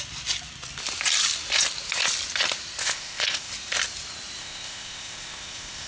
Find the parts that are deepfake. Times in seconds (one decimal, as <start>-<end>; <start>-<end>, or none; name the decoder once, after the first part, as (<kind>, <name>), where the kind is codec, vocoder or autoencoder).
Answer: 2.8-3.5 (codec, ZipCodec); 4.4-5.9